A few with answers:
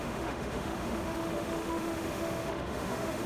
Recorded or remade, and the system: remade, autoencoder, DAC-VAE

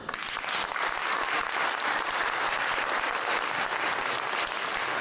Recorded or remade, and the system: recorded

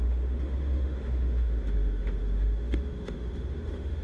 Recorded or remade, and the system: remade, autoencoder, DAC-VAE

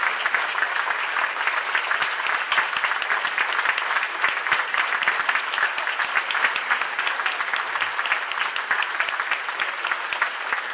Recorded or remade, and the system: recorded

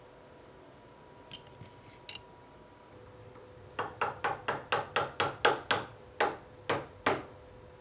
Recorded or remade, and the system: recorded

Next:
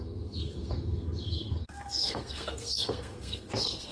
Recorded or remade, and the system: remade, codec, SNAC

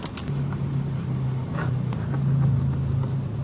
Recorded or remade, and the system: recorded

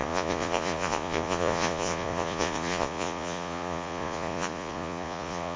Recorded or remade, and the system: remade, vocoder, Vocos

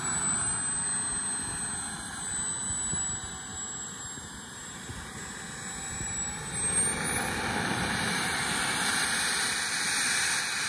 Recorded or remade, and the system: recorded